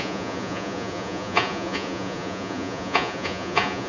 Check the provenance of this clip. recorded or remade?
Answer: remade